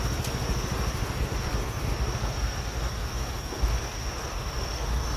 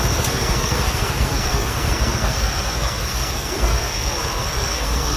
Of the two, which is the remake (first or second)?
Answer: second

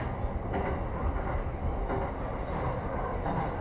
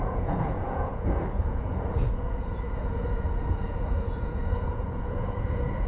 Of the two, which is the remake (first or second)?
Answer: second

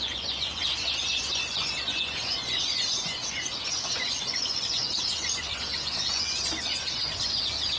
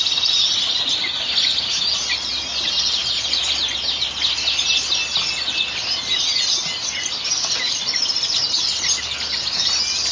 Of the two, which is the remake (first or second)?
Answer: first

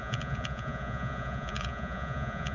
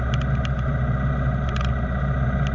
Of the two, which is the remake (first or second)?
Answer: first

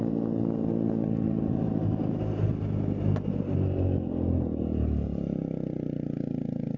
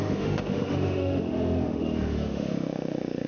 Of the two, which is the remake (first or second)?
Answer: second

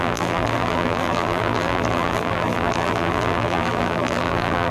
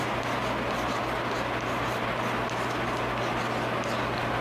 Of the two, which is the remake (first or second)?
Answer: first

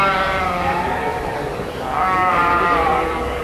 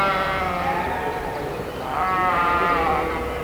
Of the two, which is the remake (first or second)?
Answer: first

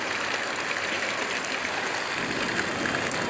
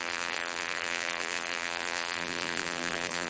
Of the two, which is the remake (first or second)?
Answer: second